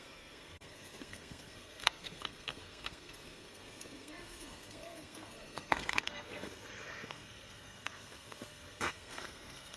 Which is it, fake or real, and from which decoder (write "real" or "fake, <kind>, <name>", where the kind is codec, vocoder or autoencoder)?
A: fake, codec, SNAC